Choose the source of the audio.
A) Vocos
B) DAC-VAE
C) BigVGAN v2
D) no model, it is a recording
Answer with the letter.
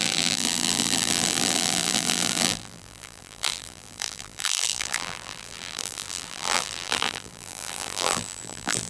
C